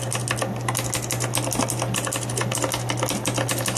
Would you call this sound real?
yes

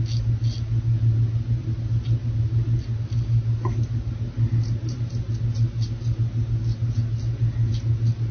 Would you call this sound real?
yes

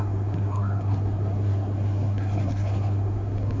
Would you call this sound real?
no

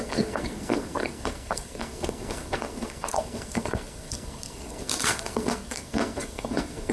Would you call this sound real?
no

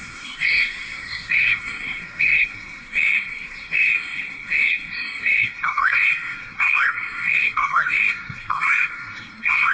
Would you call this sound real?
no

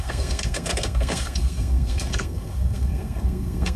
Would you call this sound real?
no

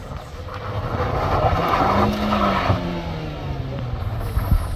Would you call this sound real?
yes